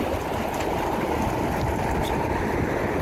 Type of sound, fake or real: real